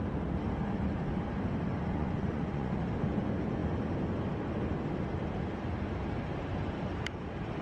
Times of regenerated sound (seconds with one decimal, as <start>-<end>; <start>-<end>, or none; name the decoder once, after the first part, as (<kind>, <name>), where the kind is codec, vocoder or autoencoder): 1.9-2.8 (vocoder, Vocos)